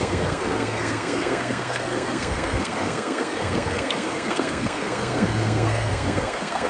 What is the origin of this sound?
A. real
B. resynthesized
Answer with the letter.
B